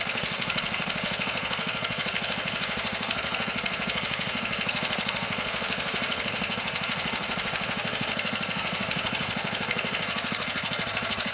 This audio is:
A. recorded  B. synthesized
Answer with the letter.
B